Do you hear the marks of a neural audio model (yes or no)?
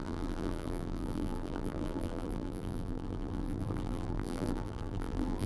yes